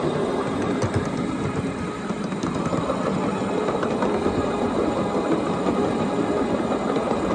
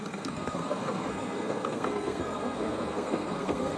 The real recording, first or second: first